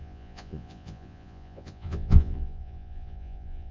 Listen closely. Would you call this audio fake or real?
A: fake